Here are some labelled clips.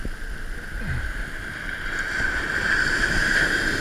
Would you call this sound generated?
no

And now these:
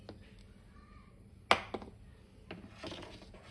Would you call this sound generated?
no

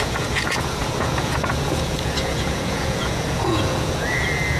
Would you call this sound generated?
yes